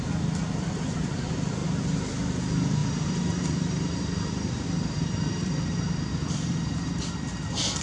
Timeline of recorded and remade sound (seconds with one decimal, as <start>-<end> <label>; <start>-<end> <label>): 0.0-2.8 recorded; 2.8-7.8 remade